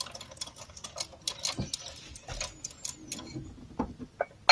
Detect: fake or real real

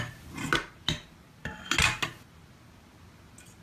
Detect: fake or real real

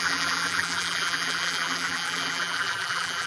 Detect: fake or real fake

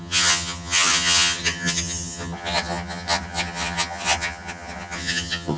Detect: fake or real fake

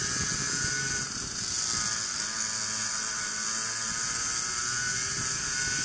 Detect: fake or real real